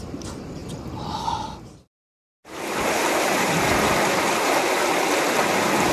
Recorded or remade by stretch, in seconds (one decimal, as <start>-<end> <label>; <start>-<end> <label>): 0.0-5.9 recorded